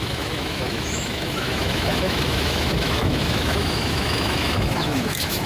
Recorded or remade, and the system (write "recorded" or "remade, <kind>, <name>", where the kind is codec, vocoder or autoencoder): remade, autoencoder, DAC-VAE